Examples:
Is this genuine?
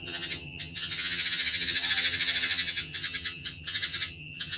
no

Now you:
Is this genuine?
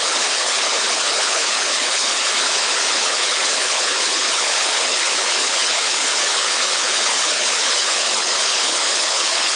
no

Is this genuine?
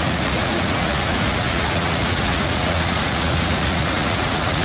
no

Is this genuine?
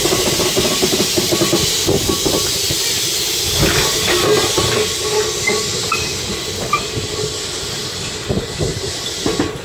yes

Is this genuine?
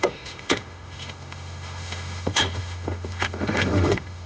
no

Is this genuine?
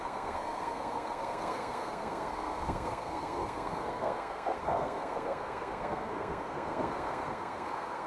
no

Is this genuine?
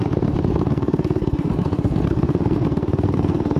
no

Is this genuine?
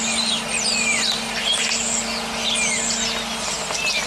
yes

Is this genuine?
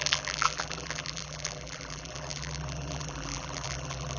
no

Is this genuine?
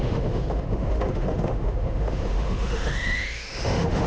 no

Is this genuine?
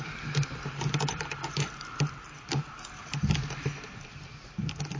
no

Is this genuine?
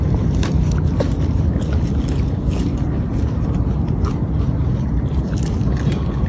yes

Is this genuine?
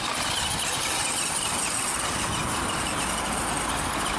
yes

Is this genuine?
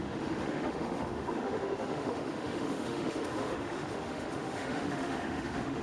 no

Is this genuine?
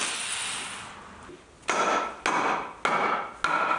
yes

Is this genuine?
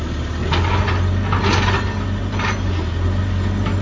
yes